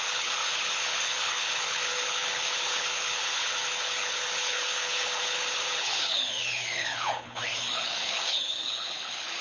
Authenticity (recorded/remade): remade